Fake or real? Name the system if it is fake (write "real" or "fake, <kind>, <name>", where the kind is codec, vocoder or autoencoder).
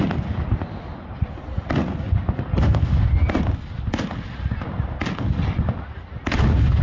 real